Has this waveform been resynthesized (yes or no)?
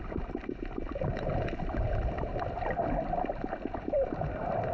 no